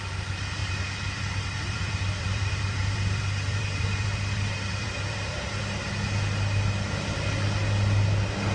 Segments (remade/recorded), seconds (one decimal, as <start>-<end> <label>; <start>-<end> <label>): 0.0-0.6 recorded; 0.6-5.6 remade; 5.6-8.5 recorded